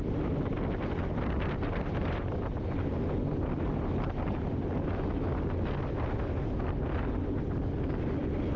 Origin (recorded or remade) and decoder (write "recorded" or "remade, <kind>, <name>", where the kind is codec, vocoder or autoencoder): recorded